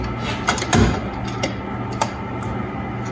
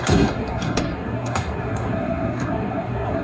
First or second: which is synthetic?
second